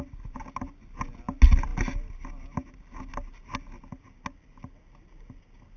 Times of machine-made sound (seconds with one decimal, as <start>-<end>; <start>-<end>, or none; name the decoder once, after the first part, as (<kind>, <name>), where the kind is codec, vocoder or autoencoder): none